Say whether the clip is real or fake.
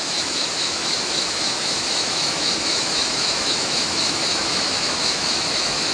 fake